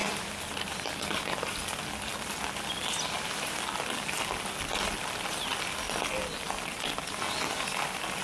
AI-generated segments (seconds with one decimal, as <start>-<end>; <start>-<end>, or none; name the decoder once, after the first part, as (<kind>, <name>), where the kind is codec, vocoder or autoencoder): none